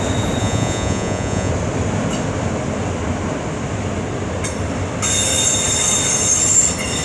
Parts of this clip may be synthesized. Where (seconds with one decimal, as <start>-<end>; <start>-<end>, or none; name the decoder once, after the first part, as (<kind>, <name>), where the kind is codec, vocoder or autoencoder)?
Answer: 0.4-1.5 (vocoder, Vocos)